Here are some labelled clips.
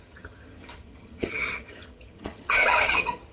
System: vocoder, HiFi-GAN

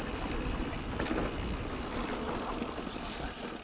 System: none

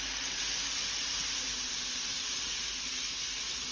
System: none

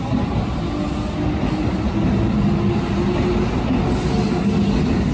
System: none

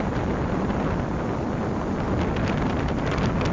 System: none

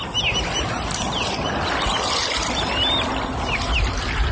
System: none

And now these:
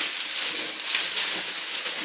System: none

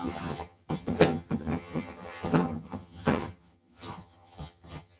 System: vocoder, HiFi-GAN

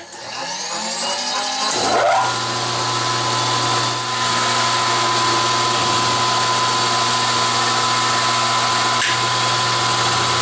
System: none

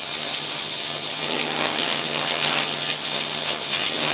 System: vocoder, HiFi-GAN